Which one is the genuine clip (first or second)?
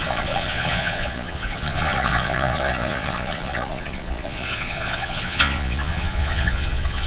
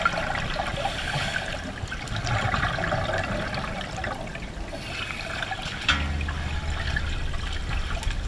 second